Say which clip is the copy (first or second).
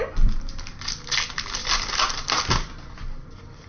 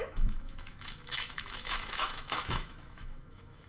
second